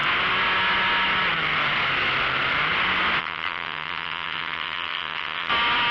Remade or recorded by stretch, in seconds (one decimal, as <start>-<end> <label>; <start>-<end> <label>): 0.0-3.2 recorded; 3.2-5.5 remade; 5.5-5.9 recorded